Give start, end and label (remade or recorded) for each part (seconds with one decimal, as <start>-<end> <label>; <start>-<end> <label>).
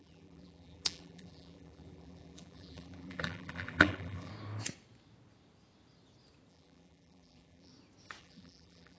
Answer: 0.0-4.3 remade; 4.3-6.5 recorded; 6.5-7.7 remade; 7.7-8.2 recorded; 8.2-9.0 remade